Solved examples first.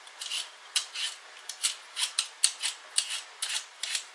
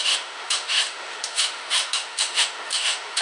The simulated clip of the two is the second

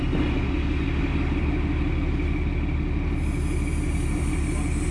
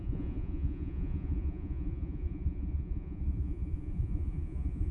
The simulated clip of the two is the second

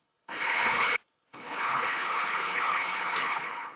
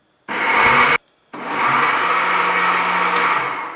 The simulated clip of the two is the first